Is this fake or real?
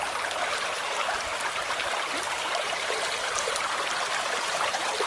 fake